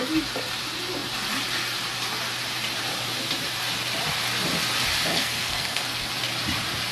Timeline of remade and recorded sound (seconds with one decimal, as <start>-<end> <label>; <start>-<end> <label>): 0.0-5.1 recorded; 5.1-6.1 remade; 6.1-6.9 recorded